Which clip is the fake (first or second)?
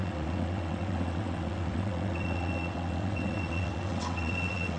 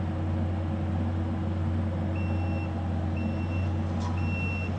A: first